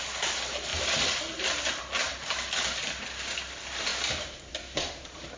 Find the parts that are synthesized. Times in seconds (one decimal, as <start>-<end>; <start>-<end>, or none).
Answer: none